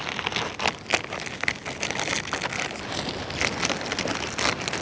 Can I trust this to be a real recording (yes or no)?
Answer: yes